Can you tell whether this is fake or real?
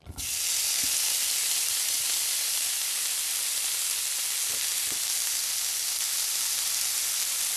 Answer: real